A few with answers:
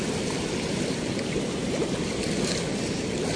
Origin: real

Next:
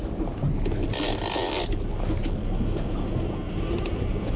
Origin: real